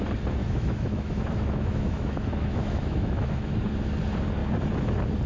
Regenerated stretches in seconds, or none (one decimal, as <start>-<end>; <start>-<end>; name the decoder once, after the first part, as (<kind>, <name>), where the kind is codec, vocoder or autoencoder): 0.4-3.6 (autoencoder, DAC-VAE)